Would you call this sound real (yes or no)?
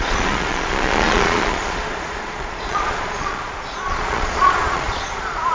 no